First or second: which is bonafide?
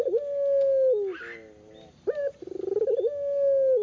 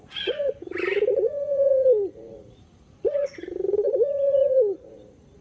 first